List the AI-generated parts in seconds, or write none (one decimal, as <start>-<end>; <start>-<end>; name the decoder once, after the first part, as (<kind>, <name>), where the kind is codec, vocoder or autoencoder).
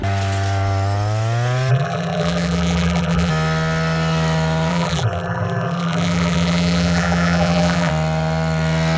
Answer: 1.7-3.3 (vocoder, BigVGAN v2); 4.7-7.9